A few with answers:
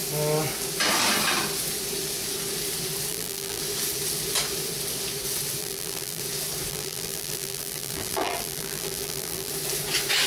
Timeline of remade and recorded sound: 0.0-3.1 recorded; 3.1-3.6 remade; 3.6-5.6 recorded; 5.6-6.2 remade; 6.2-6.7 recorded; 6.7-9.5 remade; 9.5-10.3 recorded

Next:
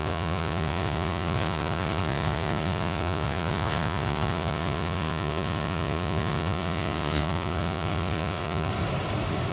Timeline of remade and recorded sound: 0.0-8.7 remade; 8.7-9.5 recorded

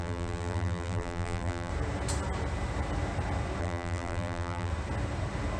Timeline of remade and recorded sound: 0.0-1.7 remade; 1.7-3.6 recorded; 3.6-4.7 remade; 4.7-5.6 recorded

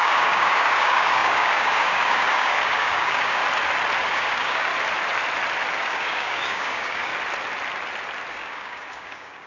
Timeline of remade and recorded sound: 0.0-3.4 remade; 3.4-4.0 recorded; 4.0-4.7 remade; 4.7-5.8 recorded; 5.8-7.1 remade; 7.1-8.3 recorded; 8.3-9.5 remade

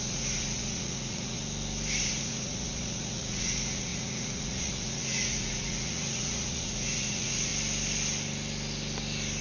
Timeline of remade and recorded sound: 0.0-1.4 remade; 1.4-2.0 recorded; 2.0-7.5 remade; 7.5-9.4 recorded

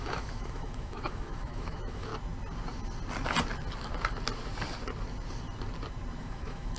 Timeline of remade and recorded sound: 0.0-2.1 remade; 2.1-6.2 recorded; 6.2-6.8 remade